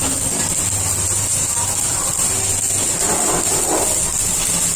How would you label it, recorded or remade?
recorded